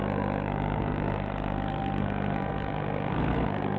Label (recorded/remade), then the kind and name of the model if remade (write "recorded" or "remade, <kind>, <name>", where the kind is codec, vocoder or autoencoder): remade, codec, SNAC